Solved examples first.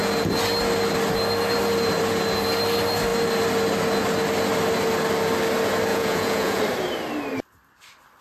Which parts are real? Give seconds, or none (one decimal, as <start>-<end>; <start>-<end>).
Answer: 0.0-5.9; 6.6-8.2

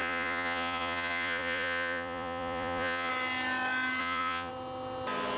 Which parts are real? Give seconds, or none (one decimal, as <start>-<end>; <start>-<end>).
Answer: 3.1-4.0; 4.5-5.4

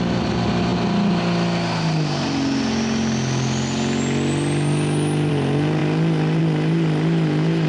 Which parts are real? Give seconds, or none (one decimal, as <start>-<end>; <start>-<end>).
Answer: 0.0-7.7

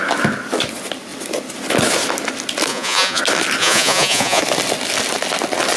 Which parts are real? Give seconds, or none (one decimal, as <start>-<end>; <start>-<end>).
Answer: 0.0-2.7; 3.2-3.6; 4.4-5.8

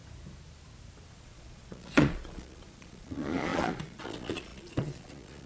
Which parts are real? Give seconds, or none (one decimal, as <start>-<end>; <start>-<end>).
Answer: 0.0-1.1

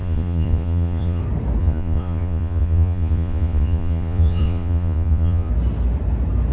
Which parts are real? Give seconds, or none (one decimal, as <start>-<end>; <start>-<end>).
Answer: 1.2-1.6; 5.5-6.5